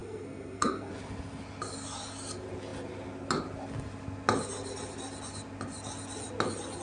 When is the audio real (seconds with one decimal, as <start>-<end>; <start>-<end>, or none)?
0.9-6.8